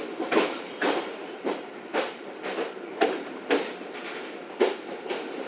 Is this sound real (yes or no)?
no